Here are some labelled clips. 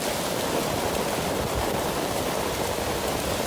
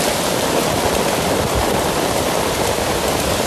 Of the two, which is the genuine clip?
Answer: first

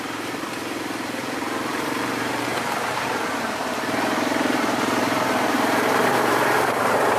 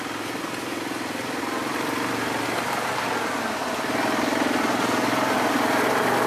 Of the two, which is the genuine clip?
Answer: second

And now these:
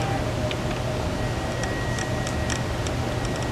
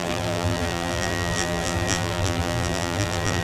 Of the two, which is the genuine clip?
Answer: first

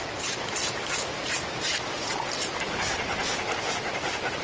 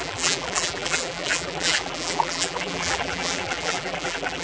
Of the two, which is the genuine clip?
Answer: first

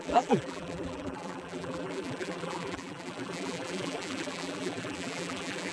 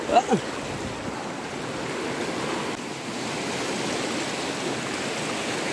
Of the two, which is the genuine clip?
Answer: second